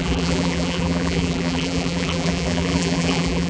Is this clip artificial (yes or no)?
yes